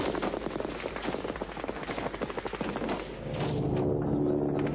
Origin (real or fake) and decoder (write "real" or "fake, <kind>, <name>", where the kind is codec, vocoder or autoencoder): real